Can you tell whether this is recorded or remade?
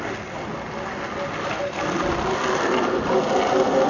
recorded